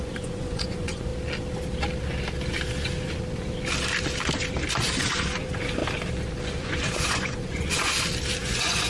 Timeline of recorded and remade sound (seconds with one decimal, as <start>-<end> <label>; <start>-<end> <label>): 0.0-1.1 remade; 1.1-5.0 recorded; 5.0-5.8 remade; 5.8-6.4 recorded; 6.4-7.9 remade; 7.9-8.4 recorded; 8.4-8.9 remade